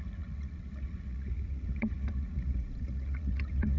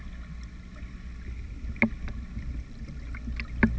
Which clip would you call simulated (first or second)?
first